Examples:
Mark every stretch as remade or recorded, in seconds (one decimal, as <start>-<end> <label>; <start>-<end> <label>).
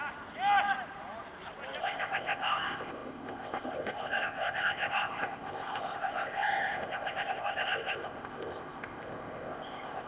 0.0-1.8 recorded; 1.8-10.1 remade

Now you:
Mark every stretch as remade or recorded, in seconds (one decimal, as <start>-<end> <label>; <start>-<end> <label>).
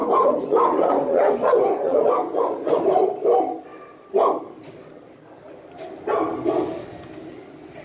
0.0-2.8 remade; 2.8-7.8 recorded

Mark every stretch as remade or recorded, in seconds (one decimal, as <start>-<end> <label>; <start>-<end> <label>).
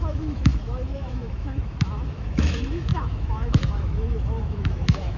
0.0-5.2 remade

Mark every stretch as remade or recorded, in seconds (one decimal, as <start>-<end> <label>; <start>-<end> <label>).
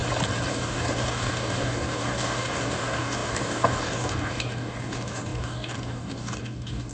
0.0-0.5 recorded; 0.5-6.9 remade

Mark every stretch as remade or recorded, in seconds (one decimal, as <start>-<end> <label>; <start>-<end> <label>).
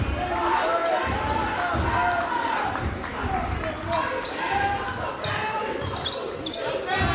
0.0-7.1 recorded